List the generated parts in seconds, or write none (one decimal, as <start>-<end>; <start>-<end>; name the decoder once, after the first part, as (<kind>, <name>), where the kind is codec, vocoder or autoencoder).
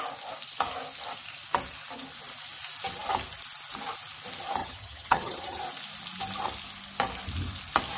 4.6-5.6 (vocoder, HiFi-GAN)